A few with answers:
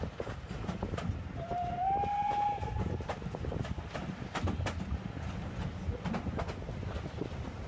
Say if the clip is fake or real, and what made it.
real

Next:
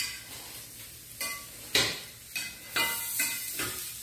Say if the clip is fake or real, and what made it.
real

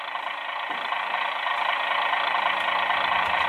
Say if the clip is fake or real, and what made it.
real